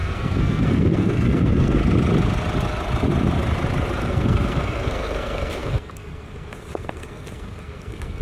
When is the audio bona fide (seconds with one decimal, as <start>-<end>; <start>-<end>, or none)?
1.8-4.0